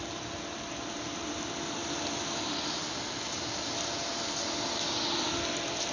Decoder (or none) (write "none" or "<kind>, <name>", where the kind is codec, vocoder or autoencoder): none